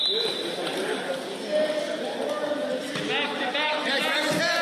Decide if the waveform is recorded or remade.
recorded